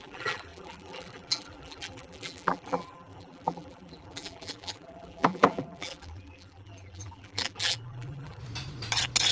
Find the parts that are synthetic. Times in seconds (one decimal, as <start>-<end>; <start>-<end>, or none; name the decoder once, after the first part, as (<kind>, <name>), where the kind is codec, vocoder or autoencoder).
0.0-8.4 (vocoder, BigVGAN v2)